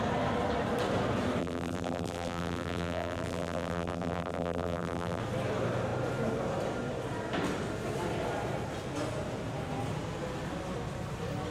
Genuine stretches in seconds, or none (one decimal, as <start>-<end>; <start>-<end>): 0.0-1.4; 5.2-11.5